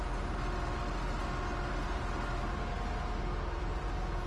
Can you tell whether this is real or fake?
real